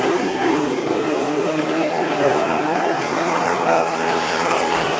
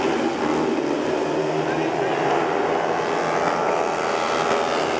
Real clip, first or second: second